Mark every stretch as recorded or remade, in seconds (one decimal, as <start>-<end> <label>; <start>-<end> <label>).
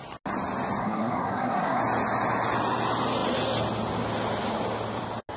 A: 0.0-0.8 recorded; 0.8-1.8 remade; 1.8-5.4 recorded